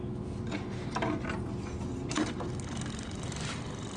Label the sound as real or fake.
real